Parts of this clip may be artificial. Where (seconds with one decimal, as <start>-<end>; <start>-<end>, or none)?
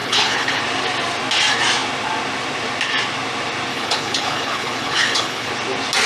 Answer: 0.0-0.6; 3.7-5.5